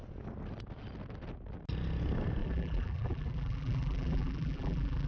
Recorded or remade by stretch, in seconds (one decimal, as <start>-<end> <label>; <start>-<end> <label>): 0.0-2.4 recorded; 2.4-5.1 remade